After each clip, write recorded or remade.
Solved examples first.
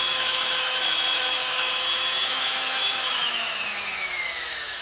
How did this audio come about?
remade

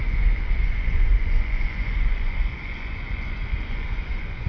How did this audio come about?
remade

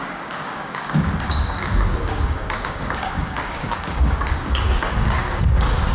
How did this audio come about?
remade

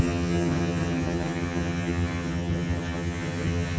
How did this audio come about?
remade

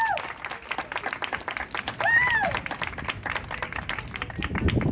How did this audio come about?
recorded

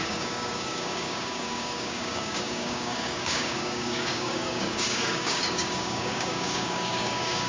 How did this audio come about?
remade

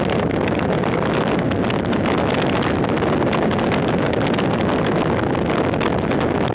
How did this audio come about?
recorded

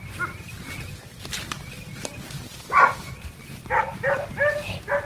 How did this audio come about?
recorded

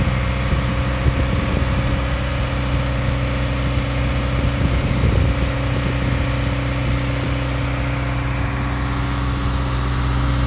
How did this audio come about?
recorded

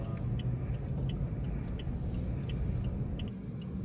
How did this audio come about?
recorded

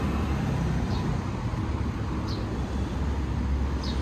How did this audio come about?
recorded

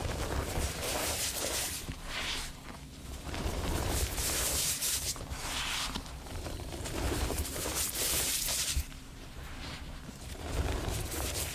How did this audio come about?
remade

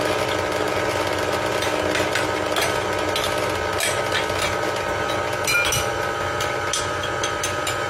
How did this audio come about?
recorded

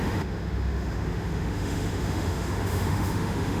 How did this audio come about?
remade